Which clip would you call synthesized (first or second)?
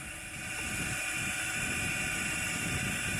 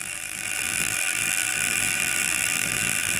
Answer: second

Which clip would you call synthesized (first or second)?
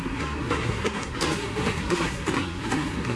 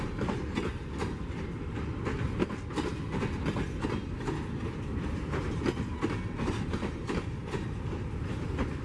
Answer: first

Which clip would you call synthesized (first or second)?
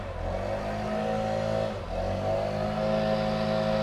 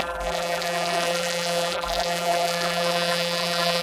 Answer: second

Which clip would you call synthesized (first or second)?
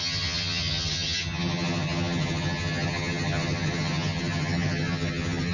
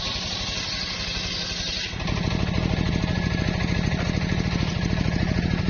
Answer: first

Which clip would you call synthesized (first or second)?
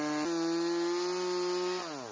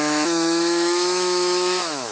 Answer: second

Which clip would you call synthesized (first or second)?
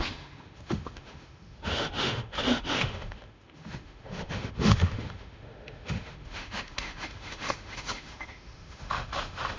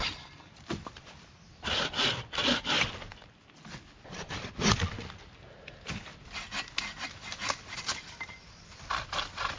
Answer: first